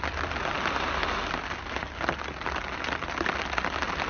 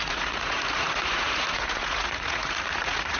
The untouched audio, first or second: first